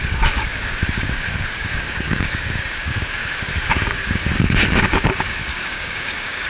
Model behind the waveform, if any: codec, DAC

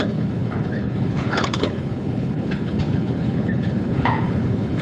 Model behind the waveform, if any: codec, HILCodec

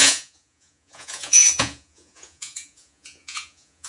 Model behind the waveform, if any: vocoder, Vocos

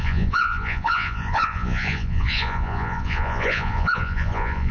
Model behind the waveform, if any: vocoder, Vocos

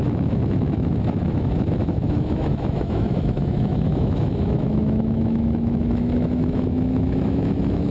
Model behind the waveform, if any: autoencoder, DAC-VAE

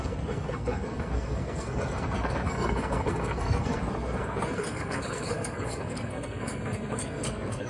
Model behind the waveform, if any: codec, SNAC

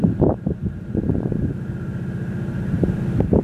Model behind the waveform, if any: vocoder, BigVGAN v2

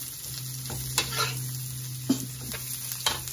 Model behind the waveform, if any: none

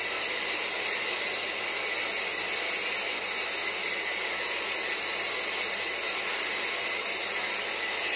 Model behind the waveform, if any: none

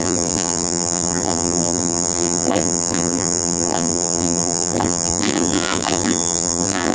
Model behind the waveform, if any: vocoder, BigVGAN v2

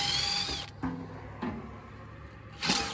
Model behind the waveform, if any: none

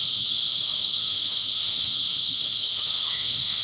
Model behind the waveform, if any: autoencoder, DAC-VAE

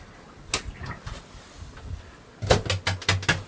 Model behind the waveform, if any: none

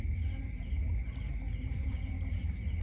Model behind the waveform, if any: vocoder, BigVGAN v2